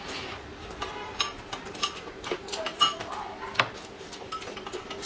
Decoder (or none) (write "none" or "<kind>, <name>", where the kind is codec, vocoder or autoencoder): none